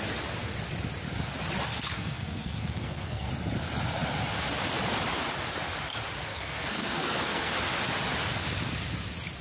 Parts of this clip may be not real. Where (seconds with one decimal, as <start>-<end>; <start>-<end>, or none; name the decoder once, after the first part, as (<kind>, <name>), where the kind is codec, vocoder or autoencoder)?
1.7-3.3 (codec, SNAC); 6.3-7.5